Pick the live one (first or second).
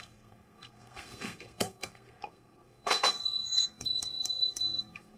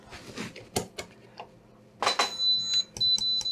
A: second